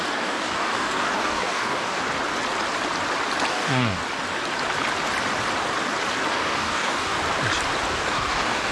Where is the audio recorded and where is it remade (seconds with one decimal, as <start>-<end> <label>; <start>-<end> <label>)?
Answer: 0.0-2.0 remade; 2.0-3.5 recorded; 3.5-4.0 remade; 4.0-6.3 recorded; 6.3-7.2 remade; 7.2-7.9 recorded; 7.9-8.7 remade